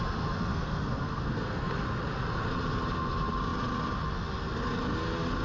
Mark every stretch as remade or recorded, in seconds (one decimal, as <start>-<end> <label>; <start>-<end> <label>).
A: 0.0-0.5 recorded; 0.5-1.7 remade; 1.7-5.4 recorded